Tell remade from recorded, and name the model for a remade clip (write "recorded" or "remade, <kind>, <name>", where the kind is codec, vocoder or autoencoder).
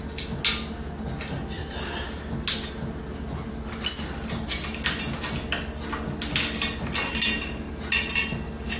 recorded